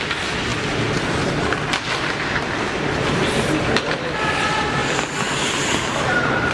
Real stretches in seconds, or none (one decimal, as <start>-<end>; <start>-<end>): 0.0-6.5